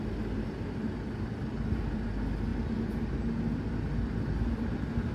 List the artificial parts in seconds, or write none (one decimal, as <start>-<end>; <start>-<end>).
none

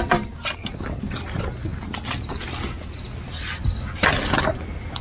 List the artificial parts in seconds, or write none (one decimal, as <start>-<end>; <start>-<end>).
none

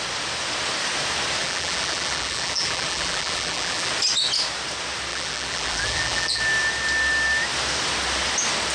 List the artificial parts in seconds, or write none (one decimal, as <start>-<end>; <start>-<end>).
1.4-3.9; 5.1-6.4

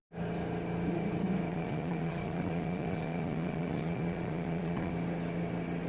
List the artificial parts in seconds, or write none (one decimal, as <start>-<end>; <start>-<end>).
1.5-4.9

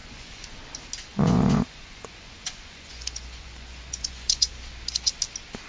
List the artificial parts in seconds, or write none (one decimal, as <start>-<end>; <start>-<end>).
0.0-0.6; 1.1-4.5

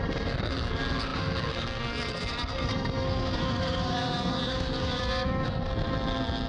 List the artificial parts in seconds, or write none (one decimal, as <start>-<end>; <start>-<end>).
0.0-5.7